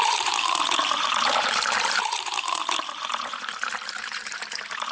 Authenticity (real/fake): fake